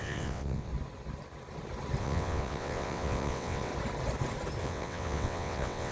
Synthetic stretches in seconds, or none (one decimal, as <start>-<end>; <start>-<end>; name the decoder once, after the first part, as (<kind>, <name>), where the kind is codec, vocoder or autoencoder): 0.0-0.7 (vocoder, WaveNeXt); 2.0-3.7; 4.6-5.9